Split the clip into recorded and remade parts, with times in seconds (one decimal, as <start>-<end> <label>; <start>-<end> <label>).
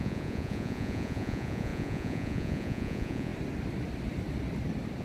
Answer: 0.0-3.3 remade; 3.3-5.0 recorded